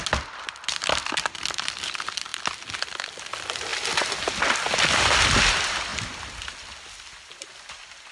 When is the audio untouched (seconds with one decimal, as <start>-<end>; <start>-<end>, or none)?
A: 0.0-8.1